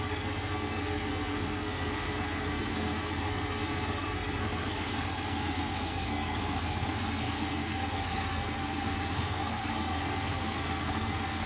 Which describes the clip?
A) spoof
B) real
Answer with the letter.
A